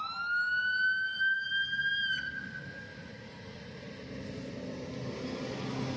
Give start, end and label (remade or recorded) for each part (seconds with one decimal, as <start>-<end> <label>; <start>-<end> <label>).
0.0-6.0 recorded